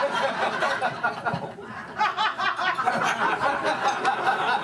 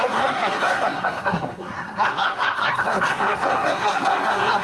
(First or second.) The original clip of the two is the first